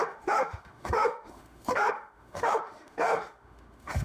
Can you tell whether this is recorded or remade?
remade